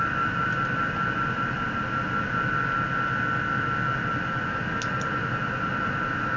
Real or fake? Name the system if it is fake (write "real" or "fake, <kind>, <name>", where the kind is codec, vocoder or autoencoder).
real